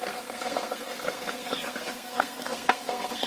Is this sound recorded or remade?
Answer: remade